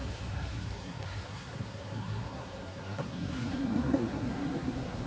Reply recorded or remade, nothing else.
remade